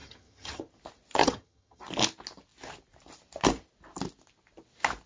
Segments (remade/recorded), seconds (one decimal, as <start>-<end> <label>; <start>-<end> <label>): 0.0-0.6 remade; 0.6-1.2 recorded; 1.2-1.8 remade; 1.8-5.1 recorded